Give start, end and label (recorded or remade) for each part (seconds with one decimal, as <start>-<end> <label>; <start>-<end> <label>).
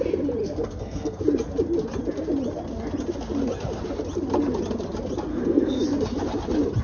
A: 0.0-0.4 recorded; 0.4-1.2 remade; 1.2-5.3 recorded; 5.3-5.8 remade; 5.8-6.8 recorded